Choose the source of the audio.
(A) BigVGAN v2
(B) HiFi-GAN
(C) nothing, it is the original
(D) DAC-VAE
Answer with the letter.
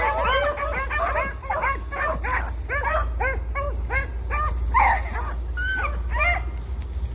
C